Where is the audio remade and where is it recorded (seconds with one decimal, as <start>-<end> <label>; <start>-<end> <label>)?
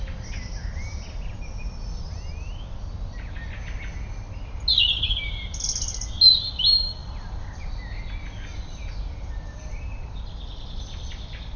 0.0-11.6 recorded